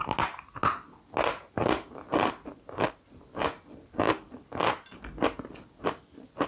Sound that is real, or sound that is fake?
real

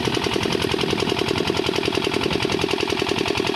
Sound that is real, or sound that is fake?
fake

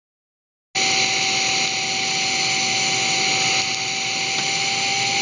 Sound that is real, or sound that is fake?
real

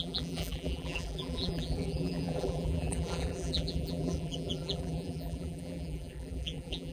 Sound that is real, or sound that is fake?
fake